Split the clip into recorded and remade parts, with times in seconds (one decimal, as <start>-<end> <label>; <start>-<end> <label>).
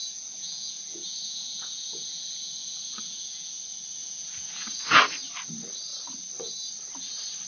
0.0-3.5 remade; 3.5-4.0 recorded; 4.0-5.0 remade; 5.0-7.5 recorded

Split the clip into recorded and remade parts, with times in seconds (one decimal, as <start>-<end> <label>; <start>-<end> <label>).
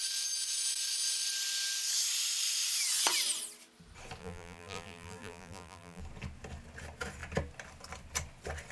0.0-4.2 recorded; 4.2-6.0 remade; 6.0-8.7 recorded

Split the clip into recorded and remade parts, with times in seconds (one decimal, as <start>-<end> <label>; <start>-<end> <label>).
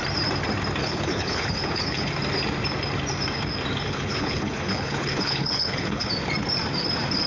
0.0-0.8 recorded; 0.8-2.1 remade; 2.1-3.8 recorded; 3.8-6.1 remade; 6.1-7.3 recorded